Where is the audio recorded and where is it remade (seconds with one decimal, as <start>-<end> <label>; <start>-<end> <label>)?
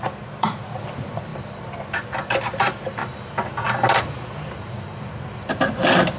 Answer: 0.0-1.3 remade; 1.3-1.9 recorded; 1.9-3.0 remade; 3.0-4.0 recorded; 4.0-6.2 remade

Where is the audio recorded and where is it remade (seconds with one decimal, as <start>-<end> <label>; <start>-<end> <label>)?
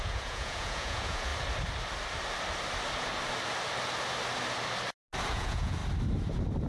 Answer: 0.0-1.3 remade; 1.3-5.3 recorded; 5.3-5.8 remade; 5.8-6.7 recorded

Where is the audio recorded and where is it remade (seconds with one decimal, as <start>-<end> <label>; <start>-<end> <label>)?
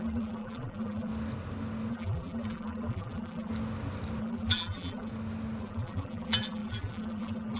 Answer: 0.0-1.1 remade; 1.1-1.9 recorded; 1.9-3.5 remade; 3.5-4.2 recorded; 4.2-5.1 remade; 5.1-5.6 recorded; 5.6-7.6 remade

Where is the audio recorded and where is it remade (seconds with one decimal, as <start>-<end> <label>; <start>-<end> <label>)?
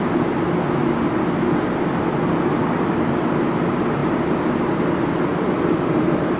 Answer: 0.0-6.4 recorded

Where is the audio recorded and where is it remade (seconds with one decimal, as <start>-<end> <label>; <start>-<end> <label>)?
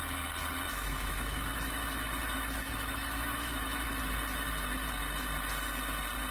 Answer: 0.0-0.7 recorded; 0.7-3.9 remade; 3.9-6.3 recorded